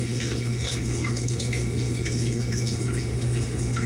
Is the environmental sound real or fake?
fake